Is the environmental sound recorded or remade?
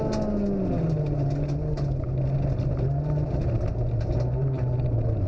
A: recorded